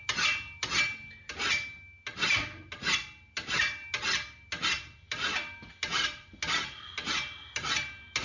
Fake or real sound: real